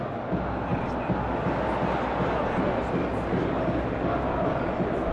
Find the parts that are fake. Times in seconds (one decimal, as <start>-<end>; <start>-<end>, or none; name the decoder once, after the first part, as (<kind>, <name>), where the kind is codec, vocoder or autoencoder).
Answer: none

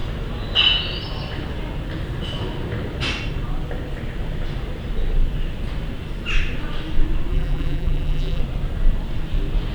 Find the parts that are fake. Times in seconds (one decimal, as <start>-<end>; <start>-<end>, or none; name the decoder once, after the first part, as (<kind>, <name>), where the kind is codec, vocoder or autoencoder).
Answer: 7.3-8.4 (vocoder, BigVGAN v2)